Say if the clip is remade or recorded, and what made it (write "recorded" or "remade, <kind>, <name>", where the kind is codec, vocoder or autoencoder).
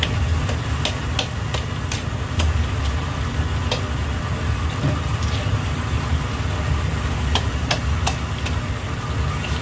recorded